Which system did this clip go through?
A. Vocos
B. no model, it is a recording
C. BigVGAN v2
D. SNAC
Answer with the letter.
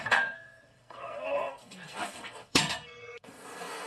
D